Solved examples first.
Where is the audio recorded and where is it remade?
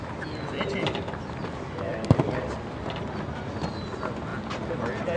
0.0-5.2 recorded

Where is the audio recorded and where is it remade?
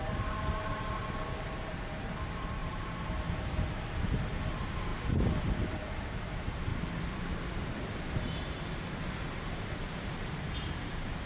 0.0-6.7 remade; 6.7-8.2 recorded; 8.2-11.3 remade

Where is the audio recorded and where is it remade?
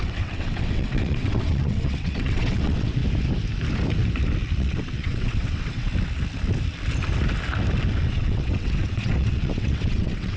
0.0-3.0 remade; 3.0-4.6 recorded; 4.6-5.9 remade; 5.9-8.1 recorded; 8.1-10.4 remade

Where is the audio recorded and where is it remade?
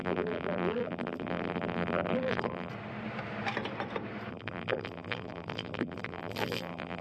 0.0-2.7 remade; 2.7-4.3 recorded; 4.3-7.0 remade